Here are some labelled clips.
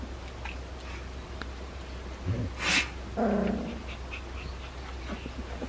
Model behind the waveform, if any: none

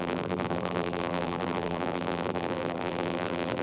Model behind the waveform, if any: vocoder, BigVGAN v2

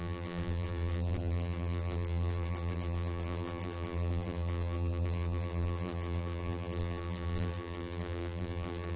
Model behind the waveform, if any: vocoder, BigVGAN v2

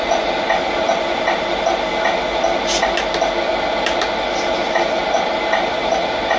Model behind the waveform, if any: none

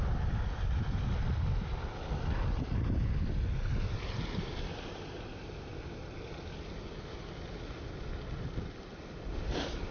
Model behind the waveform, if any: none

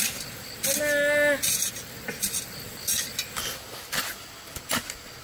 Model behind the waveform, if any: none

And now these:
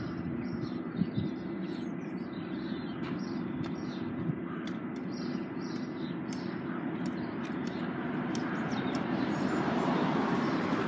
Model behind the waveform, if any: vocoder, BigVGAN v2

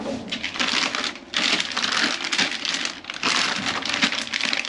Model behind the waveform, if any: none